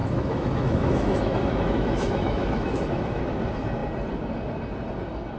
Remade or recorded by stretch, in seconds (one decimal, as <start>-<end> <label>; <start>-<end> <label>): 0.0-3.2 remade; 3.2-5.4 recorded